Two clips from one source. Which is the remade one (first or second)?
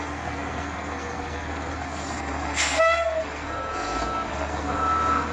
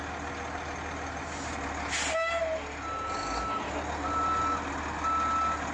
first